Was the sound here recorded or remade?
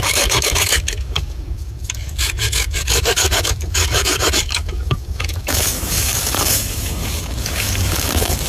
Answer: remade